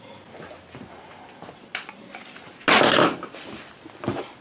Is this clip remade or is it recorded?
recorded